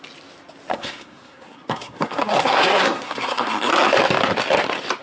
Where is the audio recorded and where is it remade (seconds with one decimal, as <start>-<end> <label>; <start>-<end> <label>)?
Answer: 0.0-0.7 recorded; 0.7-3.7 remade; 3.7-5.0 recorded